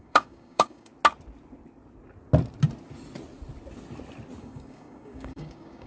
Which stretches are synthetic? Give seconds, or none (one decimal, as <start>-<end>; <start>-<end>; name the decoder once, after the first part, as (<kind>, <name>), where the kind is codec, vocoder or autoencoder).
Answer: 0.0-0.9 (codec, DAC); 4.4-5.9